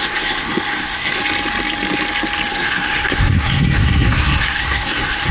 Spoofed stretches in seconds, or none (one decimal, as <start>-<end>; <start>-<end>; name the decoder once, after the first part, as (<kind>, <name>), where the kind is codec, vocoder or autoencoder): 0.0-1.2 (codec, SNAC); 2.5-5.3